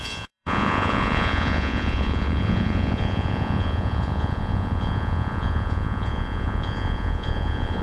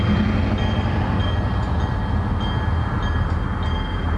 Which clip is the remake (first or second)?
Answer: first